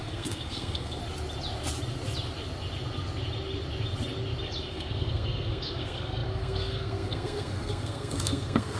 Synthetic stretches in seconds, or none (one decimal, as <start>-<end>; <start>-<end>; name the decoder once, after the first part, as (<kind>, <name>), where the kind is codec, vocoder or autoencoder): 0.0-1.0 (codec, SNAC); 4.7-8.8